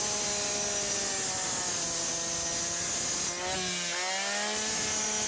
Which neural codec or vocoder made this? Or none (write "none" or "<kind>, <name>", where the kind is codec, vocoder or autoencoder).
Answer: none